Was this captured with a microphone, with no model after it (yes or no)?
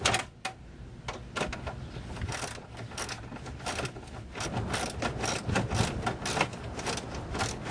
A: yes